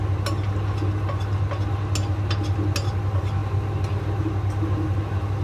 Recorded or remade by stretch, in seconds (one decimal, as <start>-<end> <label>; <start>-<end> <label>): 0.0-5.4 recorded